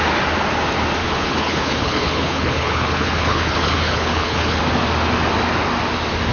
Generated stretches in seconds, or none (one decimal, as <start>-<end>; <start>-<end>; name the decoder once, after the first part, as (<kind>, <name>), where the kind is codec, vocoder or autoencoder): 1.0-4.6 (codec, HILCodec)

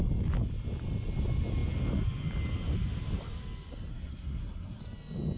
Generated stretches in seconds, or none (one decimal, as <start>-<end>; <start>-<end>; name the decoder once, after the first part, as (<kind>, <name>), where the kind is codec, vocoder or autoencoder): 3.9-4.8 (codec, SNAC)

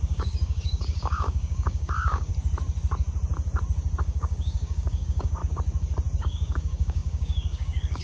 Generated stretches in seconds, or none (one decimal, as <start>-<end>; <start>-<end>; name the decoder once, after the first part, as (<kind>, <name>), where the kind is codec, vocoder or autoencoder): 0.0-2.3 (codec, DAC); 4.0-5.4; 6.2-8.0

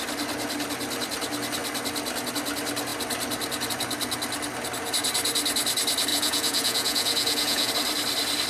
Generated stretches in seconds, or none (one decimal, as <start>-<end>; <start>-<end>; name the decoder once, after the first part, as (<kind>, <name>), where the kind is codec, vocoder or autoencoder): 6.1-7.7 (vocoder, Vocos)

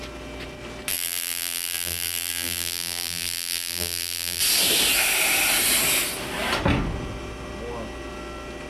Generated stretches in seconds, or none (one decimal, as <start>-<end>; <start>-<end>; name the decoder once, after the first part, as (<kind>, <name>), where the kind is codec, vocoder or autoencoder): 0.9-4.4 (vocoder, BigVGAN v2)

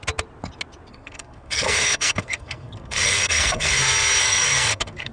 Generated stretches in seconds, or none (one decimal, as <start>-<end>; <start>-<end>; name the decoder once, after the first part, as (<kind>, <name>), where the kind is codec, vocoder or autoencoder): 0.9-3.7 (codec, SNAC); 4.2-5.1